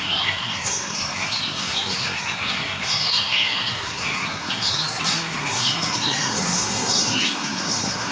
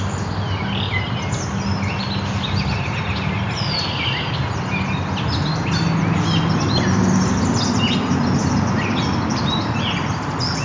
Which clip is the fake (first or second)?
first